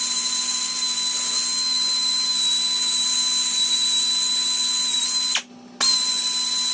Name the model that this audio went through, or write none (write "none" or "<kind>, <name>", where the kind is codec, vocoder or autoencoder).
none